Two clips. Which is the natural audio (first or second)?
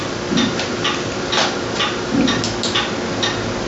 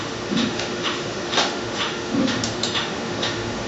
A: first